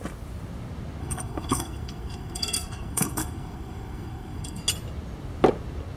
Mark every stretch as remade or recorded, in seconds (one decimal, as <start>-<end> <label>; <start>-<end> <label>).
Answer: 0.0-1.0 recorded; 1.0-4.6 remade; 4.6-6.0 recorded